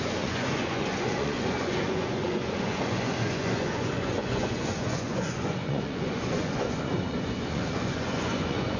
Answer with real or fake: fake